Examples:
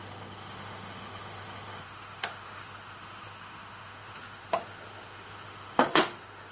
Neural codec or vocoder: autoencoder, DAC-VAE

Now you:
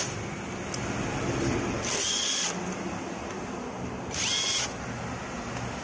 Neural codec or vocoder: none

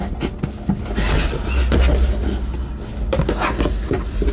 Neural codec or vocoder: none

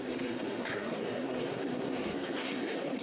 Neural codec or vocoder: codec, SNAC